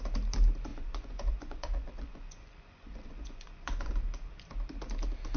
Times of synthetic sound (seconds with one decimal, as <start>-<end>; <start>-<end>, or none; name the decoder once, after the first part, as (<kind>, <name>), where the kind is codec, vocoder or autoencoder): 0.7-3.9 (vocoder, Vocos)